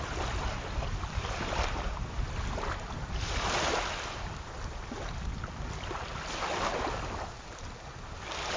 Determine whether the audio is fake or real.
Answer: real